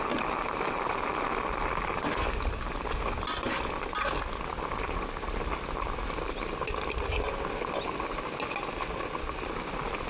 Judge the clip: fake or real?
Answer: real